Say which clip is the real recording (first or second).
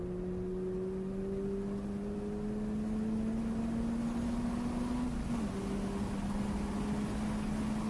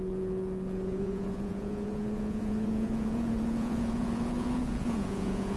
first